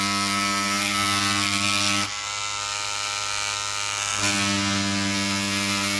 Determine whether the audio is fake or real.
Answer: real